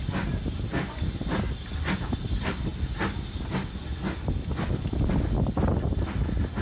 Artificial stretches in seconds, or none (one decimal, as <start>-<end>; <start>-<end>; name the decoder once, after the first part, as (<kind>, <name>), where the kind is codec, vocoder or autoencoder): none